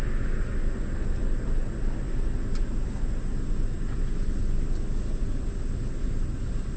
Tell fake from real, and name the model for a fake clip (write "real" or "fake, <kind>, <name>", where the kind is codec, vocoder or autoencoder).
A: real